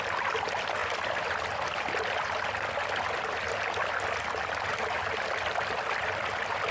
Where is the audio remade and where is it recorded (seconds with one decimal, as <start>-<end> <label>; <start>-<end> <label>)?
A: 0.0-6.7 recorded